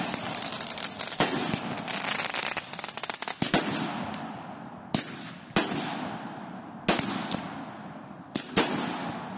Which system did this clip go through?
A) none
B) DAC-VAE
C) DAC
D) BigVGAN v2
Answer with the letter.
A